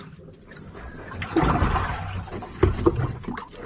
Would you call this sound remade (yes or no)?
no